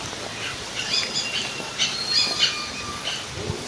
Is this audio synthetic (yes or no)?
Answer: no